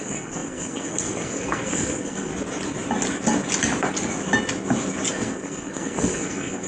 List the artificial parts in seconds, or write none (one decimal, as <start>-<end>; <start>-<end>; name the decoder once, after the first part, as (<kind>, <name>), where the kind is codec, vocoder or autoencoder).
0.0-2.3 (codec, SNAC); 5.1-6.7